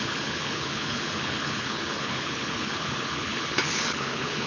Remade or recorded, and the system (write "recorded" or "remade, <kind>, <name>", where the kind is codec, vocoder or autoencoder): remade, codec, HILCodec